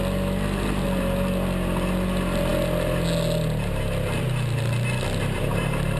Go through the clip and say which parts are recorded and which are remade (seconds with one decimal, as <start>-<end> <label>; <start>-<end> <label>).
0.0-6.0 recorded

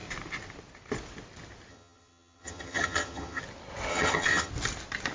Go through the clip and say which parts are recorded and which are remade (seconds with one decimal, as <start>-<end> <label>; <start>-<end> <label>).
0.0-1.7 recorded; 1.7-3.4 remade; 3.4-3.9 recorded; 3.9-4.5 remade; 4.5-5.1 recorded